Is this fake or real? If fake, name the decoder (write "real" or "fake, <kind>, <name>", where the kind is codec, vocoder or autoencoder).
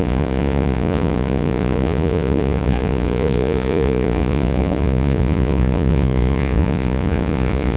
fake, vocoder, Vocos